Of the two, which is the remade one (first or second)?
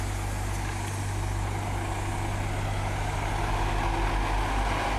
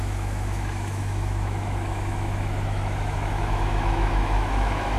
second